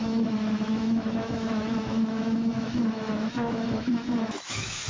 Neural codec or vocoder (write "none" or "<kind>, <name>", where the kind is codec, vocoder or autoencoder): autoencoder, DAC-VAE